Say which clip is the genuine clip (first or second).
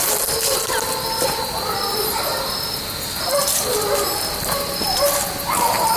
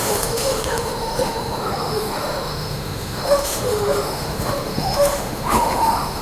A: first